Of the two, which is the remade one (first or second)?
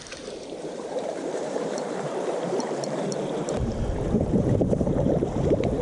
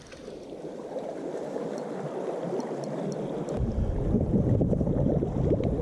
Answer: first